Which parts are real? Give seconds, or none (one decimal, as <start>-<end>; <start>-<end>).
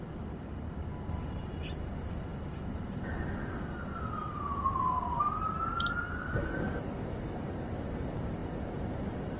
0.0-9.4